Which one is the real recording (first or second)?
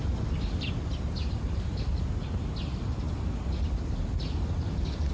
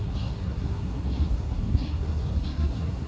first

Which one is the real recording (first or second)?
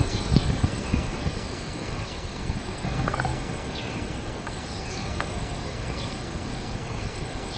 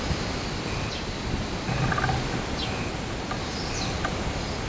second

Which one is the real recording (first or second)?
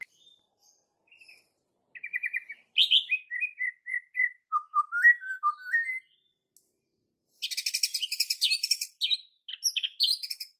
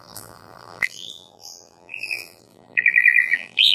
first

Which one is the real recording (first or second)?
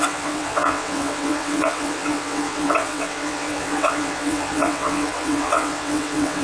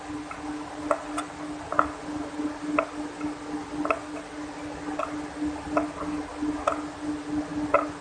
second